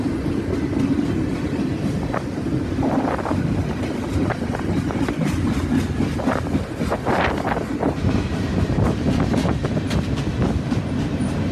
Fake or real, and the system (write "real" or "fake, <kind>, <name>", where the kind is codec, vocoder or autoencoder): real